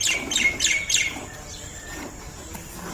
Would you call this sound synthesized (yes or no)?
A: no